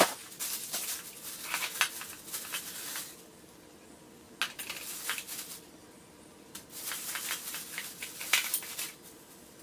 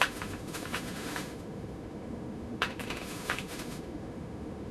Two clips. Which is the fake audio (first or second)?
second